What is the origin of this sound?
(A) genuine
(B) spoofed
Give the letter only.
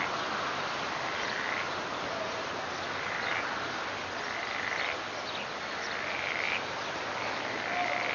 A